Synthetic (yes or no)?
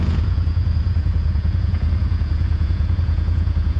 yes